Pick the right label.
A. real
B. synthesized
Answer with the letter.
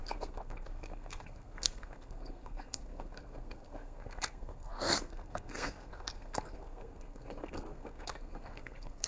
B